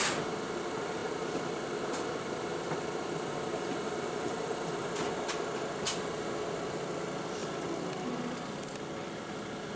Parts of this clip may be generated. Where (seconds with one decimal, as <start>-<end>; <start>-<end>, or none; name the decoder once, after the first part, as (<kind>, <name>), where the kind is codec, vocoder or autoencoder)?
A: none